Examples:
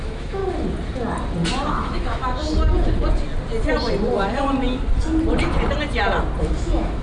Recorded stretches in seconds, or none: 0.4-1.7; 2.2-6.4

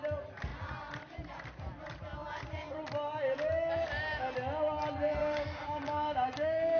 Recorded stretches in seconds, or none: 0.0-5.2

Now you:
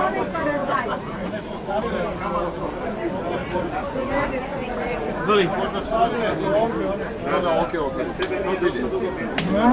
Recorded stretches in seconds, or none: 0.0-0.6; 1.8-3.4; 5.2-9.7

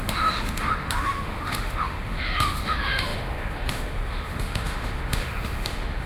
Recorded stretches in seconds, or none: none

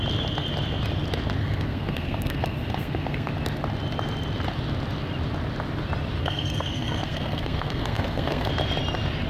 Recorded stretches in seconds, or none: 0.0-1.4; 3.3-6.2; 8.5-9.3